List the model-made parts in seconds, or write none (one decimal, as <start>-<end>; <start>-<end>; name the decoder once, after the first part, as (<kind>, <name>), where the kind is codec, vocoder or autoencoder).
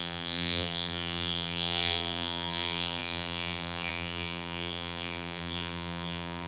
0.0-6.5 (vocoder, BigVGAN v2)